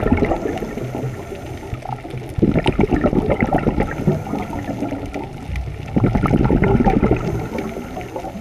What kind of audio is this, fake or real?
real